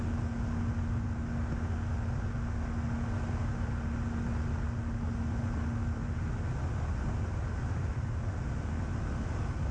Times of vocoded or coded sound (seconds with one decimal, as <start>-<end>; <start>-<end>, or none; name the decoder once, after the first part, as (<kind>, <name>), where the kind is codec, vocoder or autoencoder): none